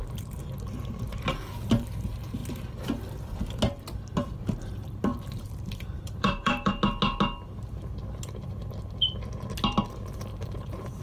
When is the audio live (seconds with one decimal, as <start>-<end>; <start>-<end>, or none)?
0.0-5.1; 6.7-10.3